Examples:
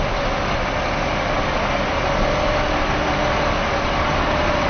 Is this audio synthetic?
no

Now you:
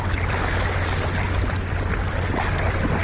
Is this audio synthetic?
no